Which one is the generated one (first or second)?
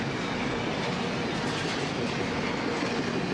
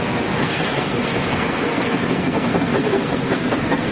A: second